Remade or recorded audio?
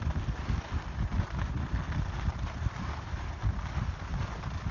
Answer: recorded